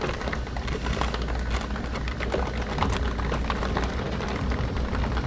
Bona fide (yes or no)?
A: yes